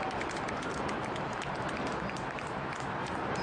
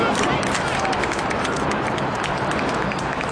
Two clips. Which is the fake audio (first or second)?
first